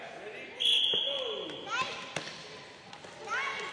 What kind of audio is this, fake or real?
real